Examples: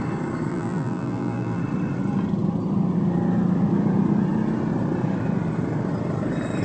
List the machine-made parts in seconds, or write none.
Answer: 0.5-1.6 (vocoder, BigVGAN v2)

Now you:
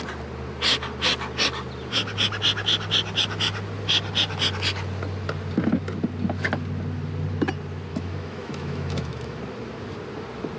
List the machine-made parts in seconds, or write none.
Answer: 7.9-9.4 (autoencoder, DAC-VAE)

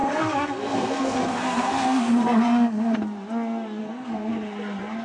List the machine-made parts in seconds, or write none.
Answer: 0.0-3.0 (codec, SNAC); 3.8-4.3